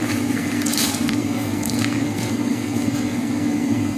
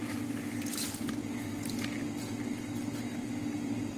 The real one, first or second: second